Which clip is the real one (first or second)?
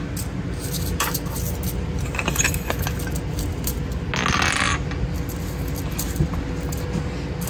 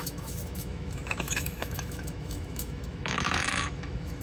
first